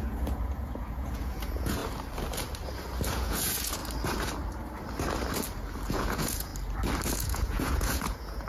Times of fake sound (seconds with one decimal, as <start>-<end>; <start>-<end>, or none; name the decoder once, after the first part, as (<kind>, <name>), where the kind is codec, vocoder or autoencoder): 0.0-1.8 (vocoder, Vocos); 3.1-3.8; 5.9-6.5; 7.1-8.5